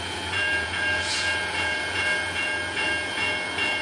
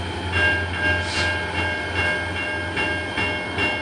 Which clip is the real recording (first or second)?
second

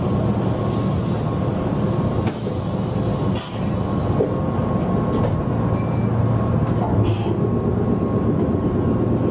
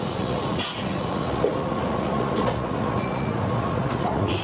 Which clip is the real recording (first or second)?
first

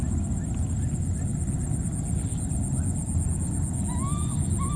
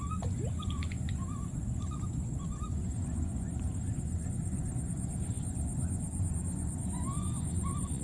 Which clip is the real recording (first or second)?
first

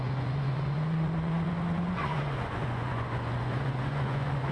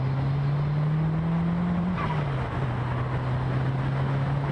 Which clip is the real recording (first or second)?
second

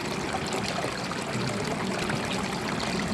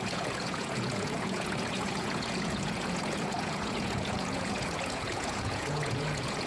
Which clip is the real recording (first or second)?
first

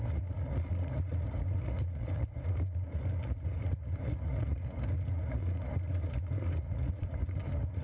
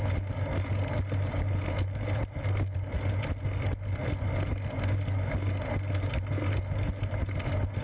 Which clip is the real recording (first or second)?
second